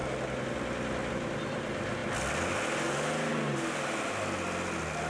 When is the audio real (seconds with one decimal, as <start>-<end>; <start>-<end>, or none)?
0.0-5.1